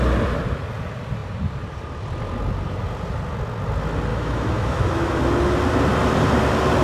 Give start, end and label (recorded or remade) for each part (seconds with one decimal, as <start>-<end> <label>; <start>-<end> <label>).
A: 0.0-4.1 recorded; 4.1-5.2 remade; 5.2-6.8 recorded